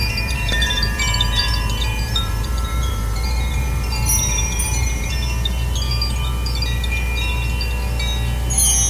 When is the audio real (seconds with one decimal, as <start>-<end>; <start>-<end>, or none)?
5.1-8.9